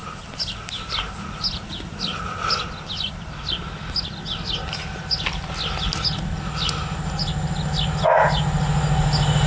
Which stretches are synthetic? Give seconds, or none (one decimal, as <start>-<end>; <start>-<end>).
none